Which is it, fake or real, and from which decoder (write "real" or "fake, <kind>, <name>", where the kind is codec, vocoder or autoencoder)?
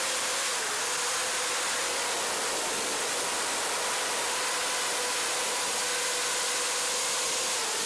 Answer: real